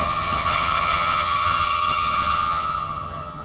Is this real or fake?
fake